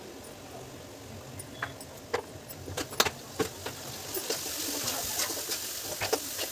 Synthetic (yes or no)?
no